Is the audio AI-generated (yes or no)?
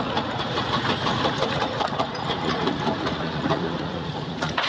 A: yes